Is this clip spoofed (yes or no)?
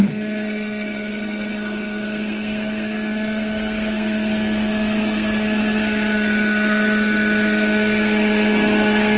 yes